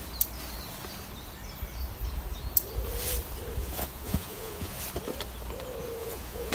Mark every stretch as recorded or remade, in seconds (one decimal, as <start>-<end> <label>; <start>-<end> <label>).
0.0-3.6 recorded; 3.6-4.8 remade; 4.8-6.0 recorded; 6.0-6.5 remade